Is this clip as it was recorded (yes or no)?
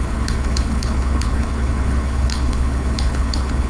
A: no